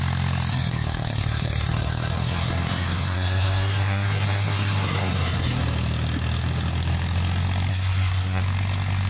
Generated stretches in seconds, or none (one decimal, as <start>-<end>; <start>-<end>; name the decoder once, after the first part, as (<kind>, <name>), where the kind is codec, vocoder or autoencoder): 0.5-5.6 (codec, SNAC); 7.7-8.4

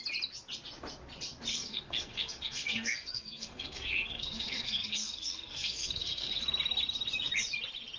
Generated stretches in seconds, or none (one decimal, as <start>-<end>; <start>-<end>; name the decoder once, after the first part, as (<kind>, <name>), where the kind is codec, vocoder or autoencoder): 1.5-6.3 (codec, SNAC)

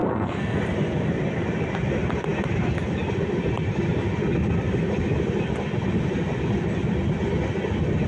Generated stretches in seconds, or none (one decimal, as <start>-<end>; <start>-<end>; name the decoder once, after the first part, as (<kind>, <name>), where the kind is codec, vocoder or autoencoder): 0.0-0.6 (codec, SNAC)

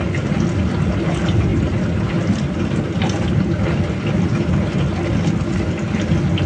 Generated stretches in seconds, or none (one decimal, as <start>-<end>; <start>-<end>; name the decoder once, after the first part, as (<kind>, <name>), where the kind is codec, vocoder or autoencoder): none